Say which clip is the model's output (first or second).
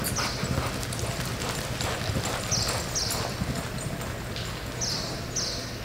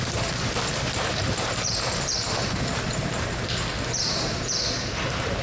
second